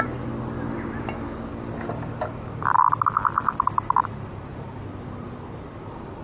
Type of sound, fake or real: real